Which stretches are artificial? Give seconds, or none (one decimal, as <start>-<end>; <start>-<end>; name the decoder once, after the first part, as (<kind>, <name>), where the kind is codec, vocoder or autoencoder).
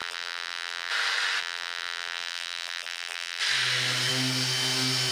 0.0-0.9 (vocoder, BigVGAN v2); 1.4-3.4